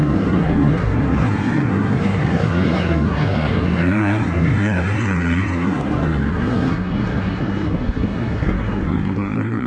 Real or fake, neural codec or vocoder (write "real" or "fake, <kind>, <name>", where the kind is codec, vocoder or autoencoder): fake, codec, SNAC